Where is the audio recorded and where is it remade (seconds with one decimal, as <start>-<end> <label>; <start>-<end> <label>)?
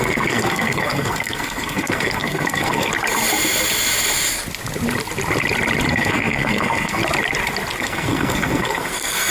0.0-2.9 remade; 2.9-5.9 recorded; 5.9-7.0 remade; 7.0-7.8 recorded; 7.8-9.3 remade